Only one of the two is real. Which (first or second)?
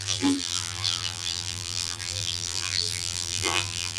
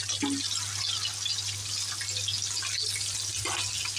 second